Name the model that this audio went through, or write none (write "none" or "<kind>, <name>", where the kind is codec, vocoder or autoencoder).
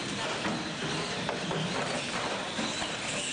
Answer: none